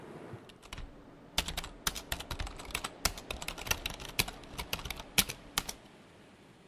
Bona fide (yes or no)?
yes